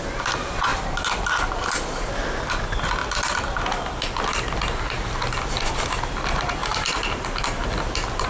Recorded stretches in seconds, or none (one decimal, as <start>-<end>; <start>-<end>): 0.0-8.3